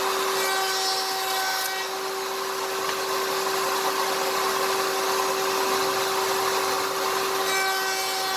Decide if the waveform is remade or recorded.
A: recorded